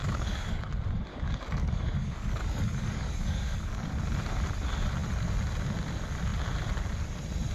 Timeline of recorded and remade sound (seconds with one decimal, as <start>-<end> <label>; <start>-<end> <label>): 0.0-0.7 remade; 0.7-1.1 recorded; 1.1-3.9 remade; 3.9-7.5 recorded